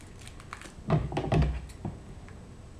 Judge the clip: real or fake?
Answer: real